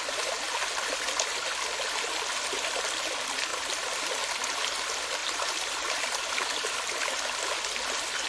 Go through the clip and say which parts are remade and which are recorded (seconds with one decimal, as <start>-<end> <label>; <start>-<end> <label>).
0.0-8.3 recorded